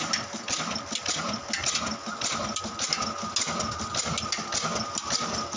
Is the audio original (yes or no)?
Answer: yes